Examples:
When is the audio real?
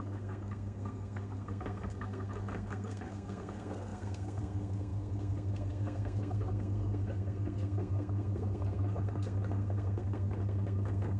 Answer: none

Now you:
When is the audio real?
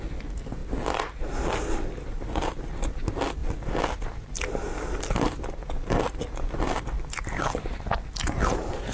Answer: 0.0-8.9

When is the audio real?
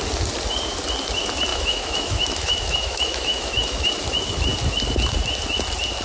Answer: 0.0-1.5; 3.9-6.0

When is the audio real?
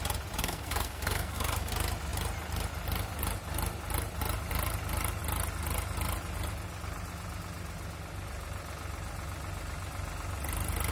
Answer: 0.0-0.4; 1.7-10.9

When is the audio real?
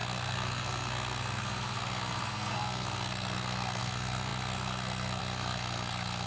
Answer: none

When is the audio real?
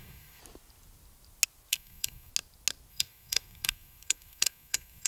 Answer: 0.4-1.7; 2.3-2.9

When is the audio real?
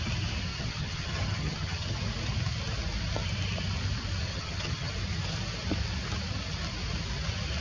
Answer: 0.0-0.5; 2.0-4.3; 4.9-7.6